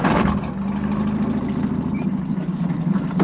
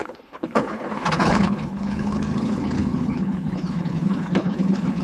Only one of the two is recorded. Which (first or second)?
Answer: first